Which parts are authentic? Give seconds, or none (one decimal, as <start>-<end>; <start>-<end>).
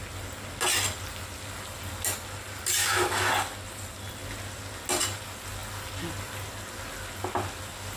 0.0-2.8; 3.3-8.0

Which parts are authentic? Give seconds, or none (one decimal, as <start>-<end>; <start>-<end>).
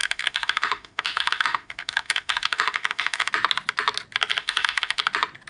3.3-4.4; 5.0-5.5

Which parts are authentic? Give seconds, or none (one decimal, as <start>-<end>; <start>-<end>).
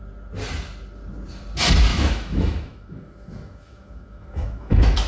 0.0-1.9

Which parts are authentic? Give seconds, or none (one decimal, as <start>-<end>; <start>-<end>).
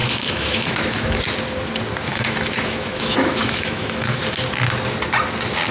1.2-2.1; 4.2-5.7